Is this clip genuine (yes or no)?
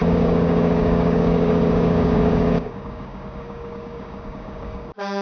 no